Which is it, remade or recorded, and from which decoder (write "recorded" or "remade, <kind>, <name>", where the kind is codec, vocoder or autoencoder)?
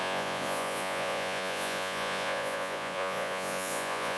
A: remade, vocoder, Vocos